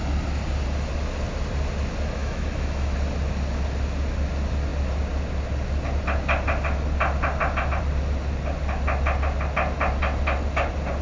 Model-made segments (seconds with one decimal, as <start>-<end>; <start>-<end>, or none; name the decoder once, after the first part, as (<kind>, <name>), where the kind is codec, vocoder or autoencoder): 2.2-2.9 (autoencoder, DAC-VAE)